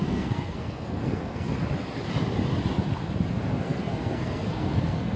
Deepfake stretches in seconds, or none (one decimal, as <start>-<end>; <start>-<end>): 0.0-1.5; 3.4-5.2